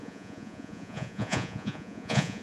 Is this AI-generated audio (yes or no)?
yes